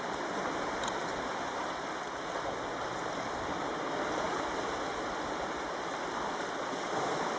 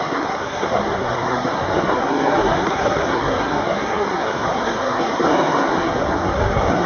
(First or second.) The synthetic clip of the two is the second